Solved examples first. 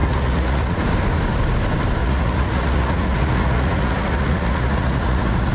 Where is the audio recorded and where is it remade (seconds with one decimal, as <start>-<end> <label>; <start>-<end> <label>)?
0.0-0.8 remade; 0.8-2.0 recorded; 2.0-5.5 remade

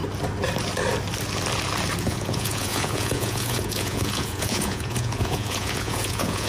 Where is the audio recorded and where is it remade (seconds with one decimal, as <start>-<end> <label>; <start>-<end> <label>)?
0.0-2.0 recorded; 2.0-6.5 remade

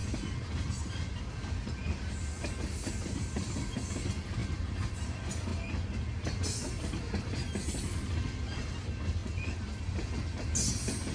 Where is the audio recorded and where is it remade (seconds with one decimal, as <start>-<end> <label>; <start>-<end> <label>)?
0.0-11.1 recorded

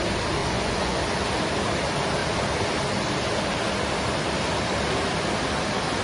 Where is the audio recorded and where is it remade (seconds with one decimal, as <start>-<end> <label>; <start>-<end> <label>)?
0.0-0.4 recorded; 0.4-1.0 remade; 1.0-6.0 recorded

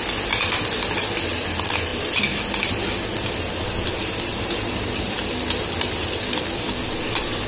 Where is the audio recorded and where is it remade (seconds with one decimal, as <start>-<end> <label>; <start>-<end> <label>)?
0.0-7.5 recorded

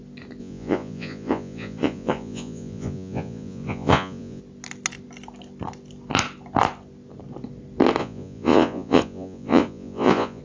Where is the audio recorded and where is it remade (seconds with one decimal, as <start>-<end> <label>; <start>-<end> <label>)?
0.0-0.4 recorded; 0.4-4.4 remade; 4.4-8.0 recorded; 8.0-10.4 remade

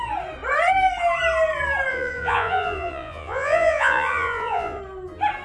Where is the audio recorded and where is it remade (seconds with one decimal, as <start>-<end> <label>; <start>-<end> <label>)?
0.0-1.9 recorded; 1.9-4.8 remade; 4.8-5.4 recorded

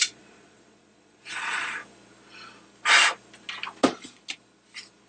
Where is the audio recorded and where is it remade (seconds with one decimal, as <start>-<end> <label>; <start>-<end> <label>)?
0.0-1.8 remade; 1.8-5.1 recorded